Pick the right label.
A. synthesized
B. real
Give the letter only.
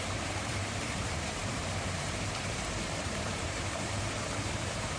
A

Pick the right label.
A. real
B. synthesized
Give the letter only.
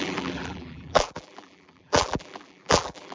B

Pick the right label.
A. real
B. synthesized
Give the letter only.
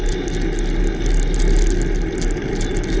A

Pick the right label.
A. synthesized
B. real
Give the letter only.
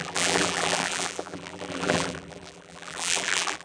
A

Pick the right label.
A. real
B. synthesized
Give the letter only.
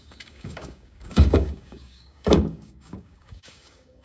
B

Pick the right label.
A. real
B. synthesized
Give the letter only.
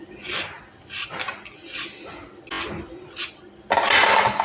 A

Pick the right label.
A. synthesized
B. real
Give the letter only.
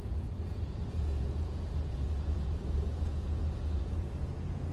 A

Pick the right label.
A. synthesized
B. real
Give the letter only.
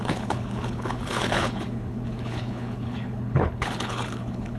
A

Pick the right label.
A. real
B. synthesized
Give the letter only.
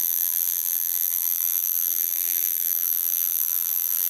B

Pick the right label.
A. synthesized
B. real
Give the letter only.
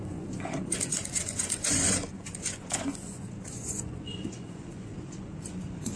A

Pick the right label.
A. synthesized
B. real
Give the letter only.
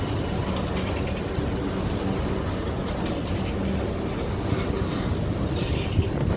B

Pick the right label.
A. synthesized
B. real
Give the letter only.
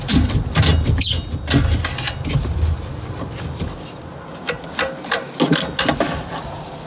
B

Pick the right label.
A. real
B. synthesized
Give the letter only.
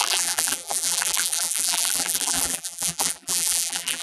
B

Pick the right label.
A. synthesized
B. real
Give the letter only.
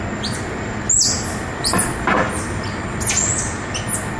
B